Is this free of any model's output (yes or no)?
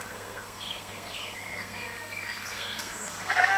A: no